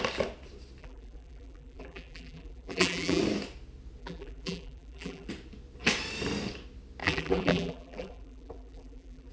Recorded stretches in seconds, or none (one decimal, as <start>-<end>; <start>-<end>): 0.0-0.8; 3.2-4.0; 5.3-7.0